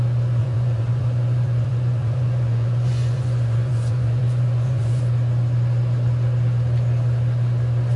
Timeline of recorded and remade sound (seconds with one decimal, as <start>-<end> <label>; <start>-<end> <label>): 0.0-0.4 recorded; 0.4-5.0 remade; 5.0-8.0 recorded